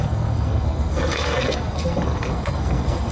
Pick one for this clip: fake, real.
fake